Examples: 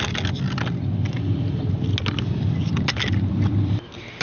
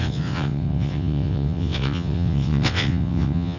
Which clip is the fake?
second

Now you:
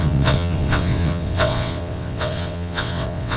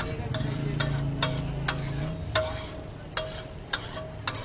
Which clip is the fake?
first